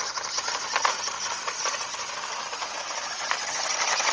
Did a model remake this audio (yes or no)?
no